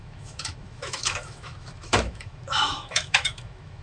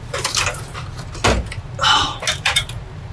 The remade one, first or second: first